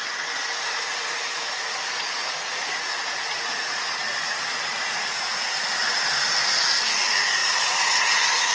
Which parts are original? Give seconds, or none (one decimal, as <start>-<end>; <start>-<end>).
0.0-0.7; 5.6-7.4